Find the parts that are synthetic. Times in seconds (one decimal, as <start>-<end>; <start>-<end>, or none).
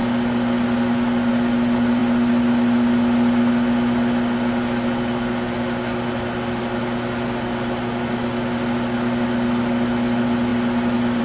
none